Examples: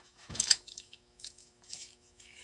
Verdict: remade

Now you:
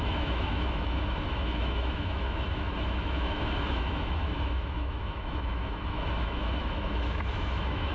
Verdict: remade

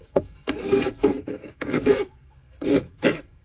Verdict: remade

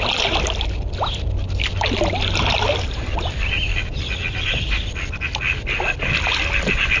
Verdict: recorded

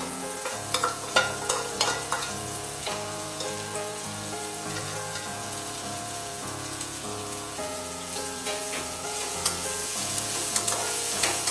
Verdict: remade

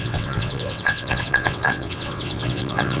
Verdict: remade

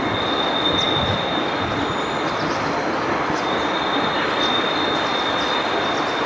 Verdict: recorded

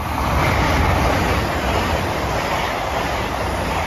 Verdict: recorded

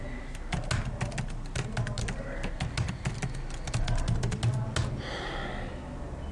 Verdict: recorded